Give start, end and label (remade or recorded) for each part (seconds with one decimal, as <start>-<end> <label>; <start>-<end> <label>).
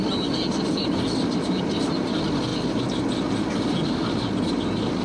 0.0-5.0 recorded